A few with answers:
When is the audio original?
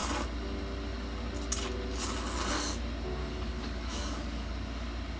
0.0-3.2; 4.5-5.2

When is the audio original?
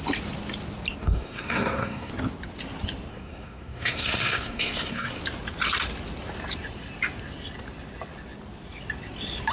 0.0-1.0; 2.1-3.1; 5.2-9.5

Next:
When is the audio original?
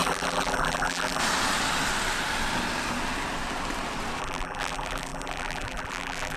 1.2-4.2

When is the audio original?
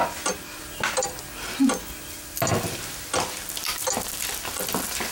0.0-5.1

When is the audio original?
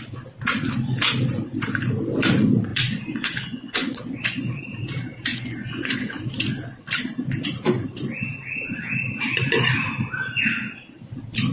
0.0-2.7; 4.6-5.3; 6.2-11.5